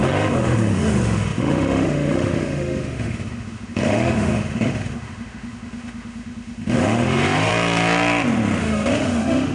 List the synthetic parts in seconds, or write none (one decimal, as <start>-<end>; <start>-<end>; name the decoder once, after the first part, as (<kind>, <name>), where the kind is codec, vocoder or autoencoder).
0.0-7.5 (autoencoder, DAC-VAE); 8.6-9.5